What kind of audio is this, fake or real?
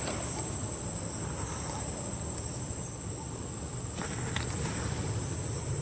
real